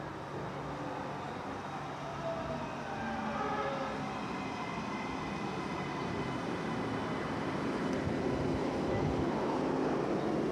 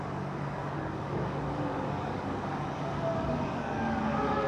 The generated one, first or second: second